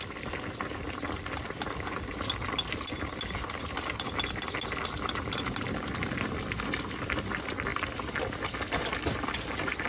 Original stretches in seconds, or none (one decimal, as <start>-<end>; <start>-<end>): 0.0-9.9